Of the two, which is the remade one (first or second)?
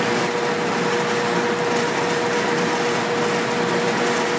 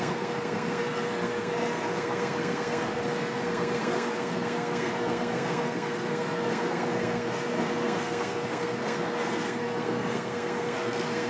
second